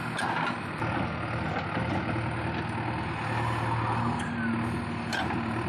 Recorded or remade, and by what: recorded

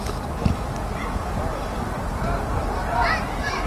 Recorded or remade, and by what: recorded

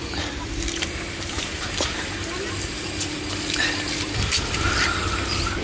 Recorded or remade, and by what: remade, vocoder, BigVGAN v2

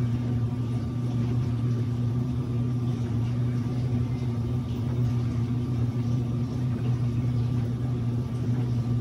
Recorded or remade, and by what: remade, vocoder, BigVGAN v2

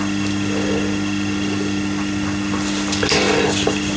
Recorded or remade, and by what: recorded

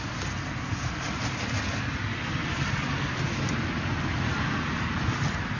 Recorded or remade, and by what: recorded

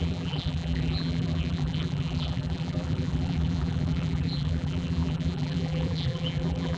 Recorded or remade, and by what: remade, vocoder, BigVGAN v2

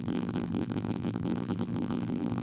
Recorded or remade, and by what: remade, vocoder, BigVGAN v2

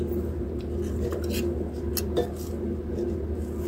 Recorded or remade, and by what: recorded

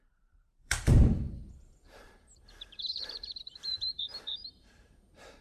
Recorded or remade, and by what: remade, vocoder, BigVGAN v2